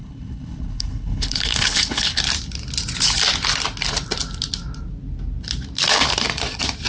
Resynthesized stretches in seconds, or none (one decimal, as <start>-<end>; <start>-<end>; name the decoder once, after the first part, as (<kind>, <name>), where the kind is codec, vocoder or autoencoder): 0.0-2.2 (codec, HILCodec)